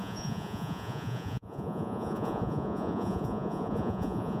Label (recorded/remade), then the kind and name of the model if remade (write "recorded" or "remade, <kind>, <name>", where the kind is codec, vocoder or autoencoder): remade, vocoder, Vocos